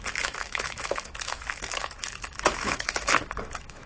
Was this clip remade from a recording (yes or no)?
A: yes